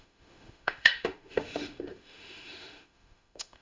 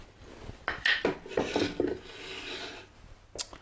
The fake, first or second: first